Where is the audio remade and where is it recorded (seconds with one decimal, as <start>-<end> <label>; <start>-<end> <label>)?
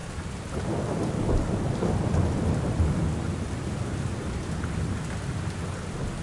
0.0-6.2 recorded